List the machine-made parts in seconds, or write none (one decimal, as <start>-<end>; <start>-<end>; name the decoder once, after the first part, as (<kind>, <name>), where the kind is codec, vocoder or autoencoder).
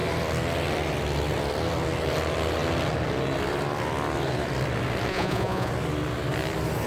5.1-5.7 (vocoder, Vocos)